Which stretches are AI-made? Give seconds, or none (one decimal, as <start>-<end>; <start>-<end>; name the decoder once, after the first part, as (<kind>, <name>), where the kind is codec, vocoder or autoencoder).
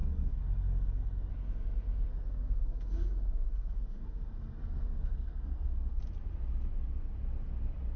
0.0-1.3 (codec, SNAC); 2.1-6.0